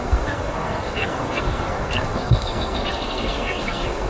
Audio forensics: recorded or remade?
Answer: remade